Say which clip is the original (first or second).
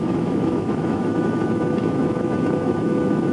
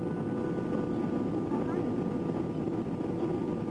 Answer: second